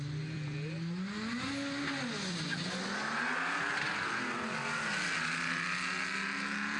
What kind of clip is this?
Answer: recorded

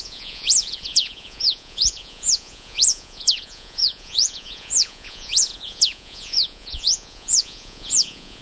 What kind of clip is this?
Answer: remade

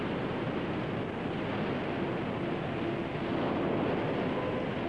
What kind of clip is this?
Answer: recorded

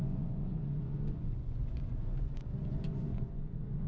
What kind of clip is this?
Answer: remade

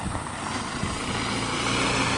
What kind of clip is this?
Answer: recorded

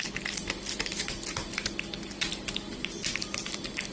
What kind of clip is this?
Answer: recorded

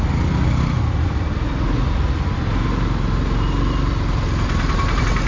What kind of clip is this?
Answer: recorded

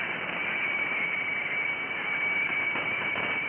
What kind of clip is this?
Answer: recorded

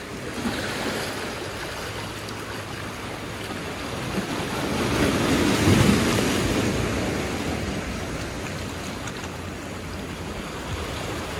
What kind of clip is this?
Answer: recorded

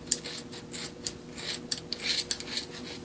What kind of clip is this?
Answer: recorded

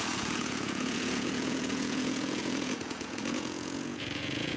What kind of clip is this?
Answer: remade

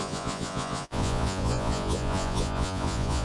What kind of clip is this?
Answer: remade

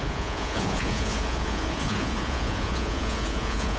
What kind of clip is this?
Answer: remade